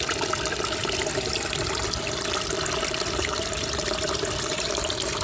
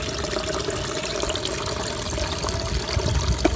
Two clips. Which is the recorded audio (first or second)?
second